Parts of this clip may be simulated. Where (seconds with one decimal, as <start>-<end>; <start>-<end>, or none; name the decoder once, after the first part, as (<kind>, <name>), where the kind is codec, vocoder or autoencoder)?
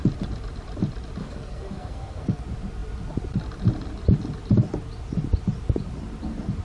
1.2-2.4 (codec, SNAC)